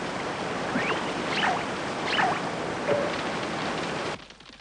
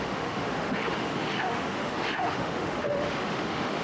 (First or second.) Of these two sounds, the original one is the first